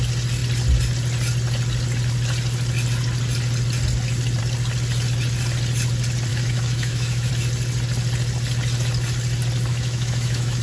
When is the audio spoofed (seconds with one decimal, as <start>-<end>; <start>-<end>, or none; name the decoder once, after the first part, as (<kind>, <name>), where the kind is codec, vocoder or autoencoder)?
6.3-7.3 (autoencoder, DAC-VAE); 9.7-10.6